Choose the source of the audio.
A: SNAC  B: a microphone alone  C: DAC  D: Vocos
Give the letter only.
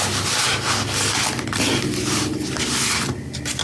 B